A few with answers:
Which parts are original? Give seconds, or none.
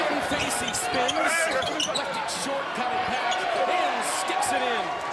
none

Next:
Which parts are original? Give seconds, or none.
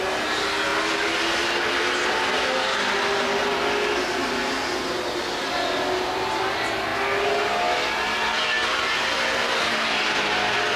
0.0-10.8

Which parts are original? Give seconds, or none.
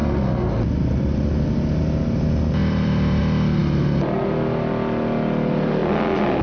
0.0-2.6; 3.2-6.4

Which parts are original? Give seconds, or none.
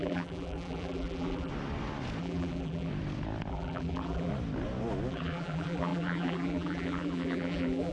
1.5-2.2; 2.9-3.5; 4.3-5.1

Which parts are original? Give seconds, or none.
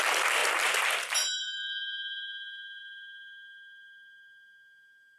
0.0-5.2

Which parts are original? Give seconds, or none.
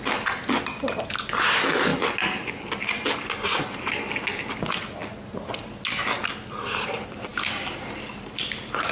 0.0-8.9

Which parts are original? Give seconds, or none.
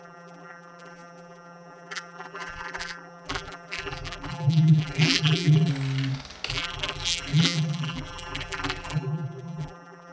5.7-6.5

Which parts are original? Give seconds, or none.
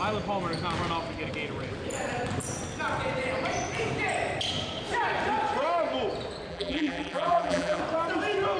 0.0-6.5; 7.8-8.6